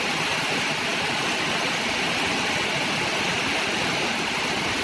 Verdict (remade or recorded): recorded